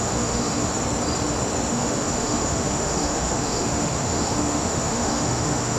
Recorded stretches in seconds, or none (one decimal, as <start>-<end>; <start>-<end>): 0.7-1.7